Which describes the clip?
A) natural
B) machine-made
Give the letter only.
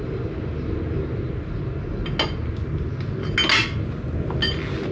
A